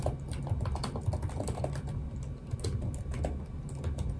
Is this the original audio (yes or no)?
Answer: yes